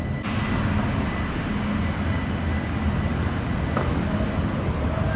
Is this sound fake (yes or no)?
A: no